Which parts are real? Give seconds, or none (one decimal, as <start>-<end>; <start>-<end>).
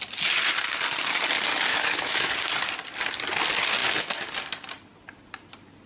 0.0-1.7; 2.3-5.9